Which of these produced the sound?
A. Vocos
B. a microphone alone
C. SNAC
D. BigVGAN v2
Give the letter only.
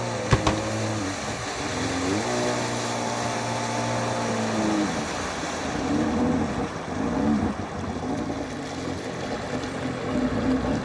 B